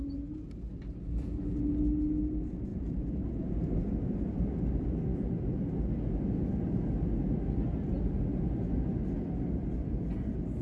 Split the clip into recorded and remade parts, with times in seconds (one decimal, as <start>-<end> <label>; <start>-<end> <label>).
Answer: 0.0-2.7 recorded; 2.7-3.9 remade; 3.9-10.6 recorded